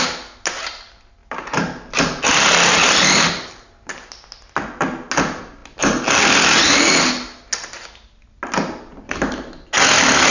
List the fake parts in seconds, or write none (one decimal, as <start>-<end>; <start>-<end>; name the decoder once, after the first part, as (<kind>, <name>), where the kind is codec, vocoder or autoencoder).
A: none